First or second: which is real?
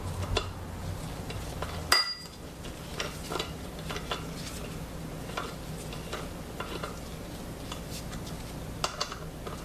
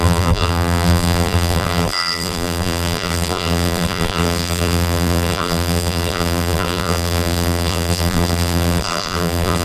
first